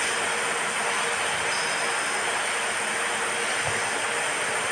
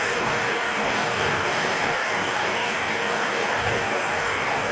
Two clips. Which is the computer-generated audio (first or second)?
second